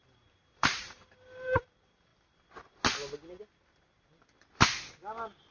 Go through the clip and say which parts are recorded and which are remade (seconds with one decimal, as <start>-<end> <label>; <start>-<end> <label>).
0.0-2.1 remade; 2.1-5.5 recorded